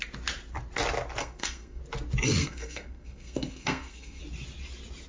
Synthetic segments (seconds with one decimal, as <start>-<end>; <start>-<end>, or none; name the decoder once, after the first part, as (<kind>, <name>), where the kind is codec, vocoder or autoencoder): 1.2-1.8 (codec, SNAC); 2.4-4.2